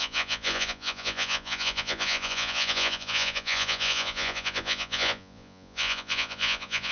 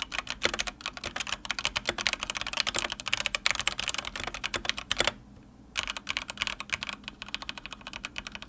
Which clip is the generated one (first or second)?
first